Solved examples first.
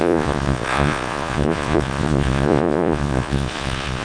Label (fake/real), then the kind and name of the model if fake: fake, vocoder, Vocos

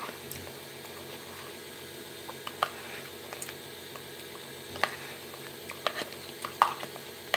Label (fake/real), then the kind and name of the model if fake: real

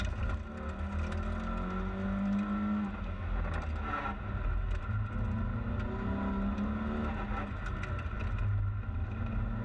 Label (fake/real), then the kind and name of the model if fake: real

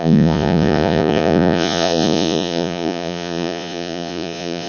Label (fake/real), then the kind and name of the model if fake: fake, vocoder, Vocos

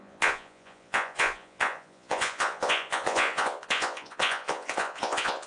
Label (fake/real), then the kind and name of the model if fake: fake, vocoder, Vocos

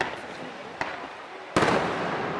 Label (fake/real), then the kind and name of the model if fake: real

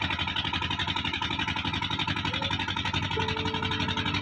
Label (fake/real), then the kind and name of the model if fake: real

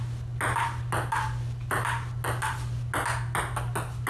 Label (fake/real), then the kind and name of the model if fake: real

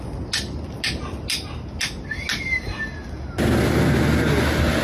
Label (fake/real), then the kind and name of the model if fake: real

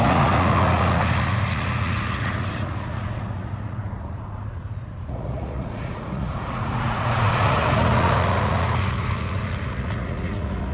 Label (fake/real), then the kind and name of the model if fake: fake, vocoder, Vocos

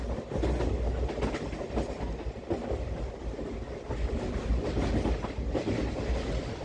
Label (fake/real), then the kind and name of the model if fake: real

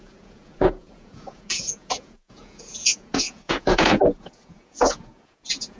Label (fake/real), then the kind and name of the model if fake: fake, vocoder, Vocos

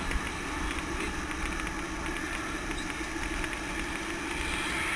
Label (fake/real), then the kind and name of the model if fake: real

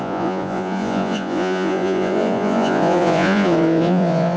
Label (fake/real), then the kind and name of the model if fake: fake, vocoder, Vocos